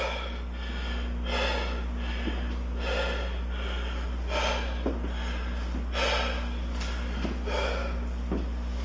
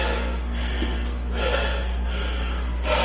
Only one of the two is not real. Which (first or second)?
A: second